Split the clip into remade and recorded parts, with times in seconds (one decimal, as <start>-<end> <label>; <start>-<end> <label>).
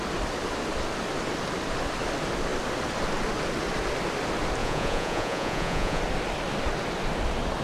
0.0-4.6 recorded; 4.6-6.0 remade; 6.0-7.6 recorded